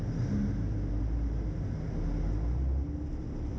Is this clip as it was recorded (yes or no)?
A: yes